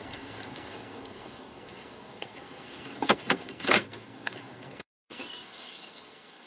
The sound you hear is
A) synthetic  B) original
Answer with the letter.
A